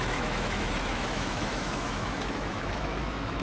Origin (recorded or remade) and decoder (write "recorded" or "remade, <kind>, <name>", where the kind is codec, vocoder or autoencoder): remade, autoencoder, DAC-VAE